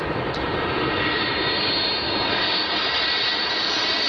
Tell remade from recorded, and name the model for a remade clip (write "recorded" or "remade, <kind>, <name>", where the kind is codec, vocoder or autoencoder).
recorded